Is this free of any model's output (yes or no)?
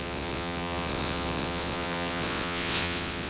no